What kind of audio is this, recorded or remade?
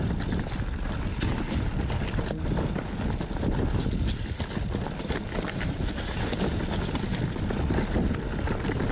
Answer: recorded